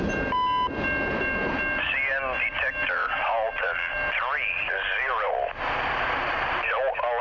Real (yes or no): yes